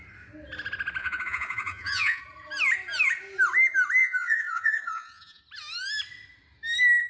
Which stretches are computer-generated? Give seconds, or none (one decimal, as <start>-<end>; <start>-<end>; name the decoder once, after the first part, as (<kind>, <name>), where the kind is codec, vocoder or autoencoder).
1.0-2.2 (vocoder, Vocos); 4.0-5.4